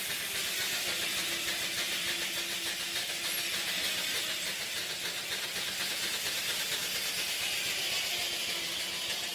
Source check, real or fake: real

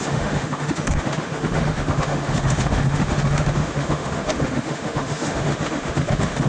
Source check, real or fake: fake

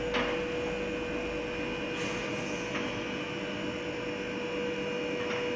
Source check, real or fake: real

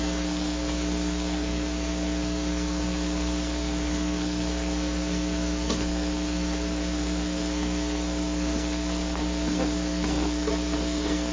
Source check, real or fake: fake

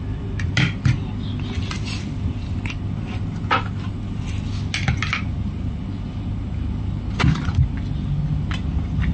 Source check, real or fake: real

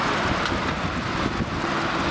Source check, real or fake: real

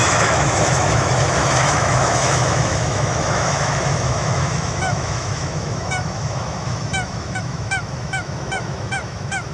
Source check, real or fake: fake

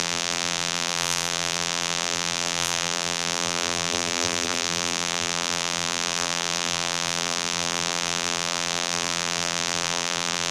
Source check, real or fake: fake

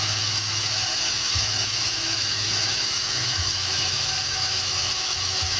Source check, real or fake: fake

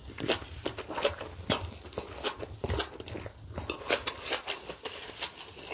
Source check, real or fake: real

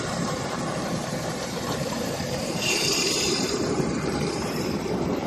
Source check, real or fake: fake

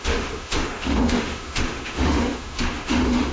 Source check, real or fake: fake